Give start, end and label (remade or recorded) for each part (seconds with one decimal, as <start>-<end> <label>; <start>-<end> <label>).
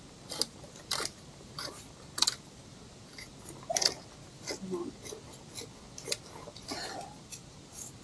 0.0-3.3 remade; 3.3-7.1 recorded; 7.1-8.0 remade